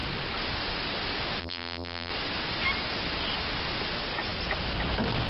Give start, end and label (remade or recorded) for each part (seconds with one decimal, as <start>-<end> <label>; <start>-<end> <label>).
0.0-1.4 recorded; 1.4-2.1 remade; 2.1-5.3 recorded